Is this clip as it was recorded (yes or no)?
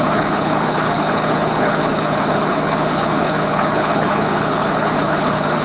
no